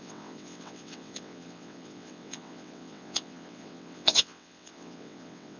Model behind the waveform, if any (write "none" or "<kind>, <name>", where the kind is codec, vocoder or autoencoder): vocoder, WaveNeXt